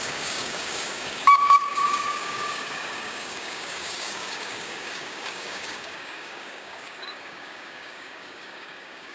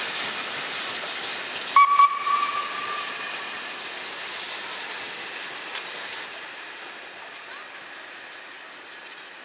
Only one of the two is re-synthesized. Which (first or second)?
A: first